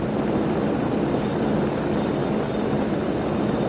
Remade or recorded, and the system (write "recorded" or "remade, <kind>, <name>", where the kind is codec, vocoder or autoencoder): recorded